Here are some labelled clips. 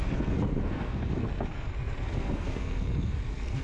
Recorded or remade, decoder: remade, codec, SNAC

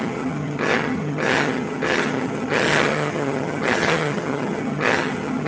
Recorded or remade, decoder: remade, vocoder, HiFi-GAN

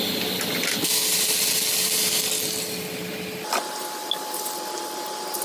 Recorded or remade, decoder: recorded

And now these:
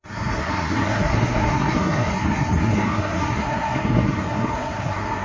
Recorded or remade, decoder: remade, codec, SNAC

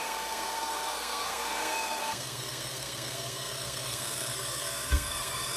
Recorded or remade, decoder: remade, codec, SNAC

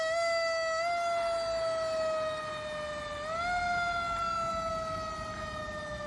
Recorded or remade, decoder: recorded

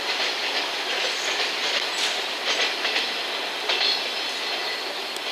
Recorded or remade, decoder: recorded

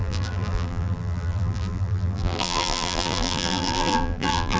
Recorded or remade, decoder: remade, vocoder, BigVGAN v2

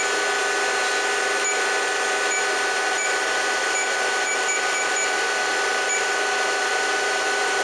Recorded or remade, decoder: recorded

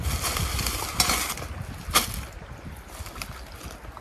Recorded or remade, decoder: recorded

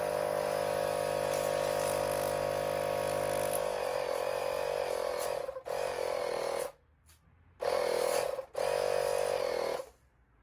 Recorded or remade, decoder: recorded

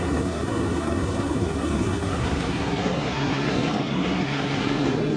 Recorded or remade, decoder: remade, codec, SNAC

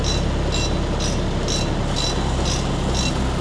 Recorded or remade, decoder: recorded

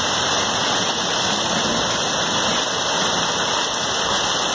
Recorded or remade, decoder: recorded